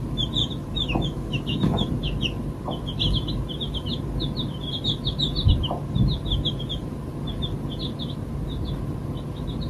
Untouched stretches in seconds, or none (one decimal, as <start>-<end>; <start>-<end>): 0.0-0.4; 1.9-9.7